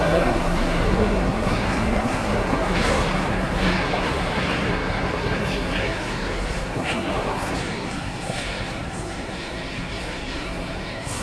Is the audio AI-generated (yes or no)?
yes